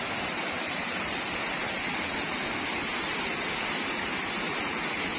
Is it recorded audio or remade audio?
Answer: recorded